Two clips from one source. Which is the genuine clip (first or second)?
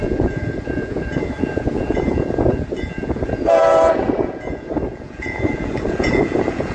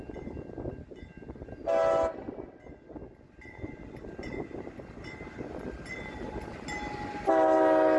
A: second